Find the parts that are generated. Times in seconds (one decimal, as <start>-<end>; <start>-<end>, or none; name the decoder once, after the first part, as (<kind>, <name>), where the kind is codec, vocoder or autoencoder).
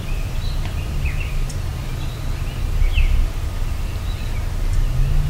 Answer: 0.0-1.7 (vocoder, BigVGAN v2)